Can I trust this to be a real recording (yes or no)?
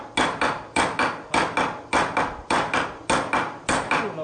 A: yes